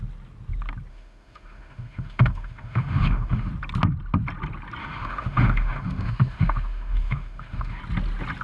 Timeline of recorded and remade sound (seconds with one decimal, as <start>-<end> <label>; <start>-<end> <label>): 0.0-0.9 recorded; 0.9-3.5 remade; 3.5-4.8 recorded; 4.8-7.8 remade; 7.8-8.4 recorded